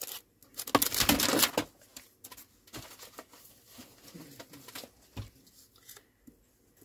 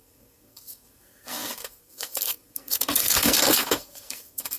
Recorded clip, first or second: first